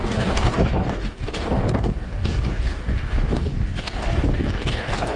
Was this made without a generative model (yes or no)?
no